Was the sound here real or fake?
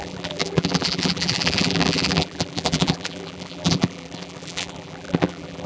fake